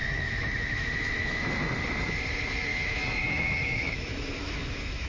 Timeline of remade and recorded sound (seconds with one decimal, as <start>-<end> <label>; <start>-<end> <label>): 0.0-1.5 remade; 1.5-2.7 recorded; 2.7-5.1 remade

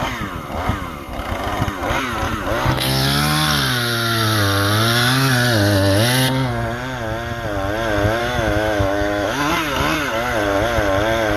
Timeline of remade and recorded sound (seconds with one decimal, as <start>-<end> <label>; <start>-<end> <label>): 0.0-8.2 recorded; 8.2-9.5 remade; 9.5-11.4 recorded